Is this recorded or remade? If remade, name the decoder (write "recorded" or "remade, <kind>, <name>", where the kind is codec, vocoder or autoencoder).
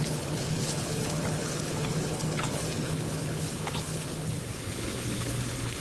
remade, codec, HILCodec